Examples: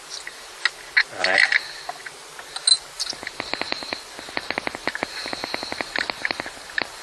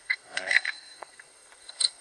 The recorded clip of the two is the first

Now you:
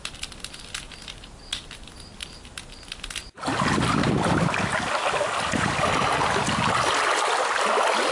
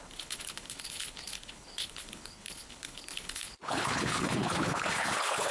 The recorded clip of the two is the first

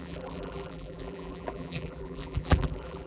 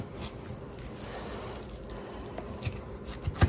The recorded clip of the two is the second